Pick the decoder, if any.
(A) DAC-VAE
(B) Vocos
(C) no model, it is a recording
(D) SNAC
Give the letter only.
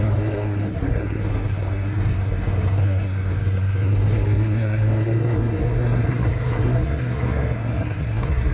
D